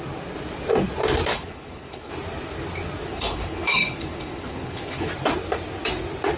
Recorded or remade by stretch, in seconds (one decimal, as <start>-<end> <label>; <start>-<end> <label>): 0.0-1.3 recorded; 1.3-2.1 remade; 2.1-3.1 recorded; 3.1-5.1 remade; 5.1-6.4 recorded